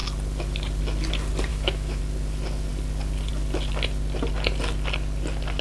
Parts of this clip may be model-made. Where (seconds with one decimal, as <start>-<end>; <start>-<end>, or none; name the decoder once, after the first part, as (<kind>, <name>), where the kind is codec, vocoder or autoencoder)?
1.5-2.0 (autoencoder, DAC-VAE)